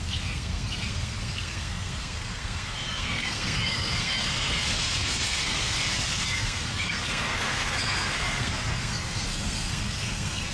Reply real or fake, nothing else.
fake